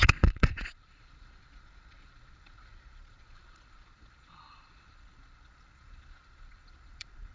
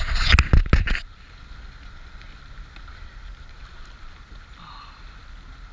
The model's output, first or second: first